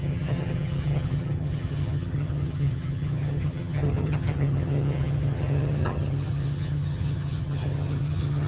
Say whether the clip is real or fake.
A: fake